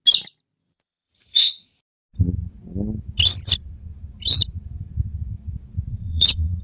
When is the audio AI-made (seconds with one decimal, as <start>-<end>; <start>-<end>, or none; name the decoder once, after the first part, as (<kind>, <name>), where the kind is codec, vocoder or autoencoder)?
0.6-1.5 (vocoder, Vocos); 5.9-6.6